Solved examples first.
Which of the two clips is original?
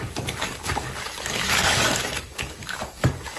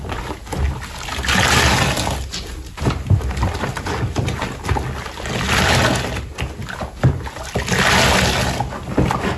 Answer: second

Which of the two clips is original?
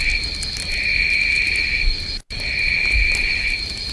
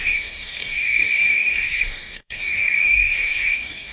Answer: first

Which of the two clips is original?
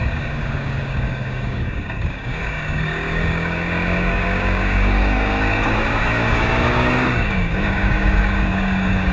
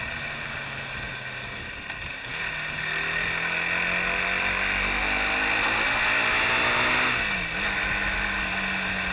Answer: second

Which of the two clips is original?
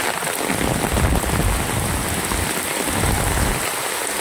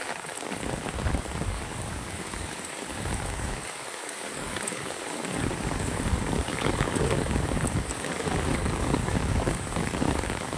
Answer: first